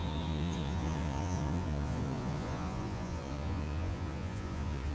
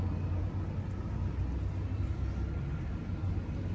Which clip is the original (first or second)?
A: second